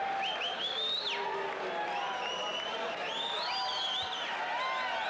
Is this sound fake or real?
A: real